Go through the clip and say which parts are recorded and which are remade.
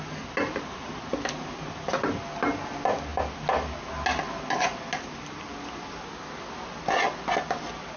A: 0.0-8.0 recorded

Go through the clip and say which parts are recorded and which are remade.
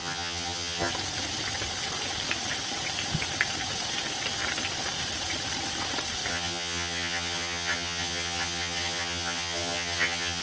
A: 0.0-0.9 remade; 0.9-6.3 recorded; 6.3-10.4 remade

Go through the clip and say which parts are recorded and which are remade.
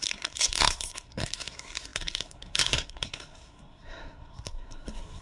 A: 0.0-5.2 remade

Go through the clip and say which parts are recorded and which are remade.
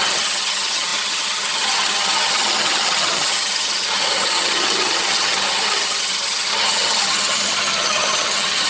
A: 0.0-8.7 remade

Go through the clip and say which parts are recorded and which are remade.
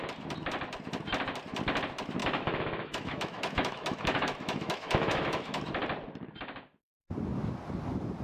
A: 0.0-2.2 recorded; 2.2-5.7 remade; 5.7-8.2 recorded